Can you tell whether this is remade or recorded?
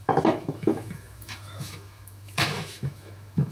remade